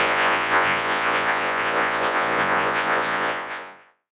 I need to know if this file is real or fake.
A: fake